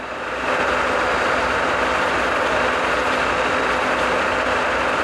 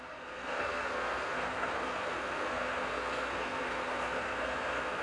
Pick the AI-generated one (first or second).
second